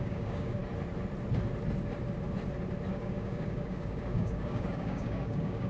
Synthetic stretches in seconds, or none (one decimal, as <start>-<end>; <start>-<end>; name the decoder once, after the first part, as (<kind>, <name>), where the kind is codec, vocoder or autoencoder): 0.0-0.6 (codec, DAC); 2.9-5.7